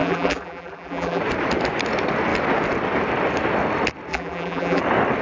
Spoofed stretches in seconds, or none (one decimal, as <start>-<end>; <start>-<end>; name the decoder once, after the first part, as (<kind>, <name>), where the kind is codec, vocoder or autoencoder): 0.0-1.2 (vocoder, BigVGAN v2); 4.1-4.8

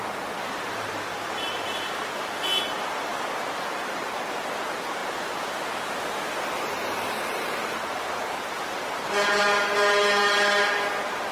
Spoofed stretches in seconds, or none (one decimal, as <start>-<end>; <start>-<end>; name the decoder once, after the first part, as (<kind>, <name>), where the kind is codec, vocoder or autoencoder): none

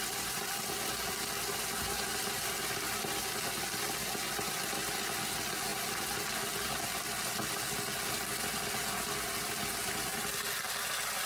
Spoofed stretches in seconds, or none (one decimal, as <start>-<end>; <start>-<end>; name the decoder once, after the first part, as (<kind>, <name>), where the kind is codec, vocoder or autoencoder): none

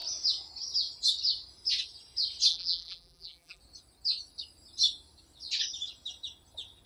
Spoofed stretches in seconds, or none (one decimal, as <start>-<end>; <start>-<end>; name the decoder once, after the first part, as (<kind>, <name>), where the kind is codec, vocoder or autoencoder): 2.5-3.6 (vocoder, BigVGAN v2)

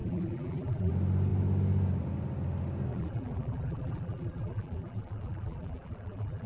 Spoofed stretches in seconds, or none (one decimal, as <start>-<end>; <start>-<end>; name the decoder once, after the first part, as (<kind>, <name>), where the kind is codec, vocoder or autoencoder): 0.0-0.9 (vocoder, BigVGAN v2); 2.9-6.5

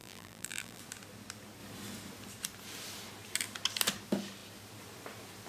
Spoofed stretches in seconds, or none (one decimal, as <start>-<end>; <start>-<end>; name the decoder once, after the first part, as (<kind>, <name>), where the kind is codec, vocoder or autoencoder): 0.0-0.8 (vocoder, BigVGAN v2)

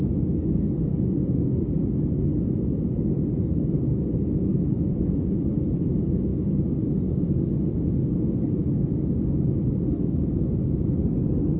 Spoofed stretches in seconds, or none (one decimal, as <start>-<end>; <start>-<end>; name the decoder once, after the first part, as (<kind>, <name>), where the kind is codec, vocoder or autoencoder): none